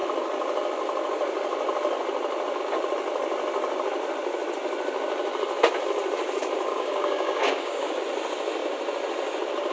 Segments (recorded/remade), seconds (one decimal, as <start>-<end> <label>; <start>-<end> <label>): 0.0-6.7 recorded; 6.7-8.0 remade; 8.0-9.7 recorded